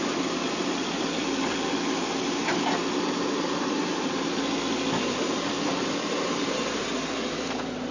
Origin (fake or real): real